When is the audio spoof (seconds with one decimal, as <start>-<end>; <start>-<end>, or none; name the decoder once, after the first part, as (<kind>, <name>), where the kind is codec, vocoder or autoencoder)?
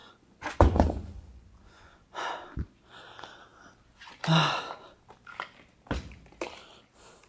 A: 0.0-2.3 (vocoder, Vocos)